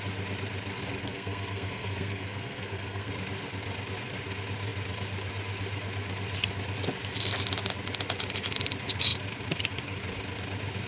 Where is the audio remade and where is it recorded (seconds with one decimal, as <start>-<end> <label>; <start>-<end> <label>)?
0.0-1.0 recorded; 1.0-3.1 remade; 3.1-10.9 recorded